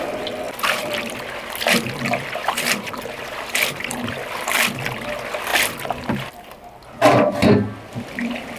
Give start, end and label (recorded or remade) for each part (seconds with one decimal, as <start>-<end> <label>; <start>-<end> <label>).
0.0-0.8 recorded; 0.8-5.1 remade; 5.1-8.6 recorded